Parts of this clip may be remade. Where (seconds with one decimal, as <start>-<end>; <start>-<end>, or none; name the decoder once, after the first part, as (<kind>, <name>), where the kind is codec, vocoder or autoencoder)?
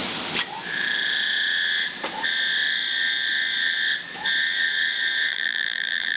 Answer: 5.3-6.2 (vocoder, BigVGAN v2)